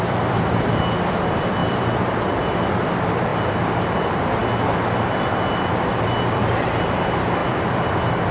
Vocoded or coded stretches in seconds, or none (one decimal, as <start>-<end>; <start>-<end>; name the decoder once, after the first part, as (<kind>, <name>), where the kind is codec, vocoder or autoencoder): 0.0-4.4 (vocoder, BigVGAN v2); 5.9-8.3

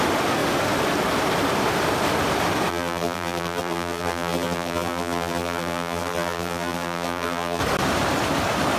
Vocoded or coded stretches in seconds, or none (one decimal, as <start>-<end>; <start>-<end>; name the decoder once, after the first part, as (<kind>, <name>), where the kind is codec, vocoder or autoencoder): 2.7-7.6 (vocoder, BigVGAN v2)